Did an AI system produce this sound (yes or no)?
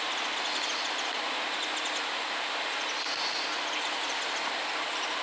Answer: no